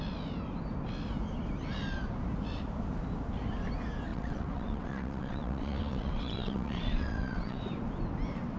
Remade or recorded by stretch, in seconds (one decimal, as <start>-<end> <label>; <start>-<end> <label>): 0.0-4.1 recorded; 4.1-7.6 remade; 7.6-8.6 recorded